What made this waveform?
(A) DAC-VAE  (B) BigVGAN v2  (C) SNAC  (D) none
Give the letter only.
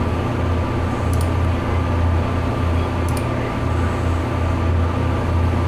D